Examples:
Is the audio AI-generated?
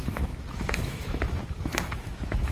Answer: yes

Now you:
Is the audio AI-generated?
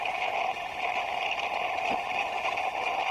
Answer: no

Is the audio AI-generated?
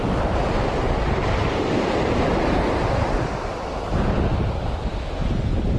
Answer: no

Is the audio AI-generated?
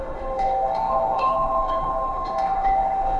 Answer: yes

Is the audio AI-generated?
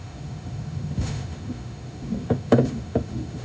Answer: yes